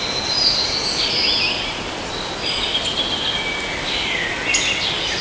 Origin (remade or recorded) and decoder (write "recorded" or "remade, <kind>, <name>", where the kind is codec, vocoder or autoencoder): recorded